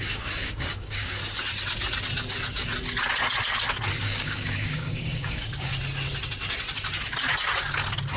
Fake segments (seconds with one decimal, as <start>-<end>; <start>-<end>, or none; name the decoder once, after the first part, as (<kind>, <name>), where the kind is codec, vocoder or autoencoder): 0.0-1.2 (codec, DAC); 4.0-5.7

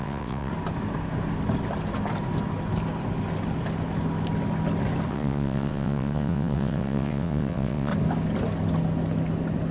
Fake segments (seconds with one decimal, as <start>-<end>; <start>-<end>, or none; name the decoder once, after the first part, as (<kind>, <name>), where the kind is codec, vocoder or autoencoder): 0.0-0.5 (vocoder, WaveNeXt); 5.1-7.9

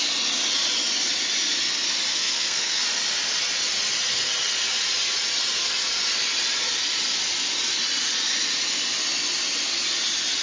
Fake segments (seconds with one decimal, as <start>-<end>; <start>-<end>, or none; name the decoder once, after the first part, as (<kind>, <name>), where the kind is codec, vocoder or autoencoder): 2.1-2.8 (codec, SNAC)

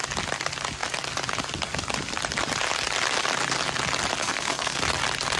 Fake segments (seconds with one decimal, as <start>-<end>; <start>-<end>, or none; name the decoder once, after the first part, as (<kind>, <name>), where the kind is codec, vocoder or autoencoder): 4.2-4.8 (codec, SNAC)